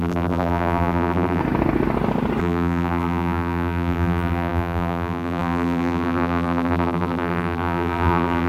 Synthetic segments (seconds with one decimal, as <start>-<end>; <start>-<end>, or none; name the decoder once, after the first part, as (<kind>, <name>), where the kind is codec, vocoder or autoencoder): 0.0-1.4 (vocoder, BigVGAN v2); 2.4-8.5